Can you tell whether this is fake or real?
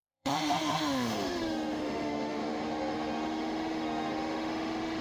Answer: fake